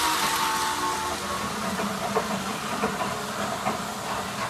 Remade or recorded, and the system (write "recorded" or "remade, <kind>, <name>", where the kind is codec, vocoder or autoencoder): recorded